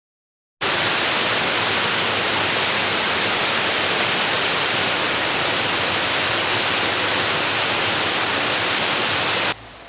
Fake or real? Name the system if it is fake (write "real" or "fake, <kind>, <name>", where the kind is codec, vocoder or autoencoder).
real